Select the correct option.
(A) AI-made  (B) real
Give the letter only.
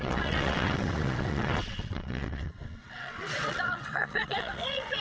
A